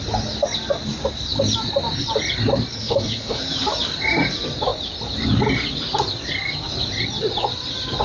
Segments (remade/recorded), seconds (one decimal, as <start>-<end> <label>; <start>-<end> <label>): 0.0-2.7 recorded; 2.7-3.4 remade; 3.4-8.0 recorded